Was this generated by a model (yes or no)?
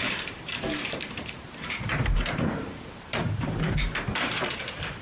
yes